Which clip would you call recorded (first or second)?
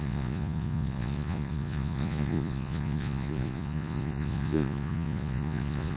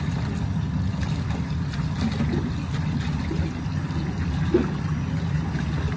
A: second